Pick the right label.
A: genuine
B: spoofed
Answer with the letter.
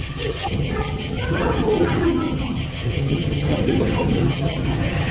B